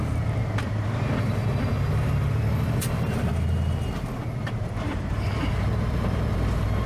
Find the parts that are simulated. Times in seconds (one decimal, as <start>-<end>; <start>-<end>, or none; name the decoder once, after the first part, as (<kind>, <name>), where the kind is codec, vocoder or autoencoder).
0.0-6.9 (vocoder, BigVGAN v2)